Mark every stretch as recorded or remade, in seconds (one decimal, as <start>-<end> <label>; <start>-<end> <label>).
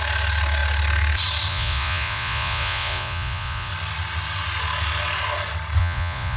0.0-1.5 recorded; 1.5-3.7 remade; 3.7-5.8 recorded; 5.8-6.4 remade